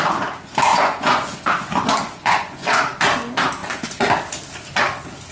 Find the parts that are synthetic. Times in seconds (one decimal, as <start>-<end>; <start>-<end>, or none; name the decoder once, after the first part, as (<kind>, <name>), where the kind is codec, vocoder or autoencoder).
0.7-2.8 (vocoder, Vocos)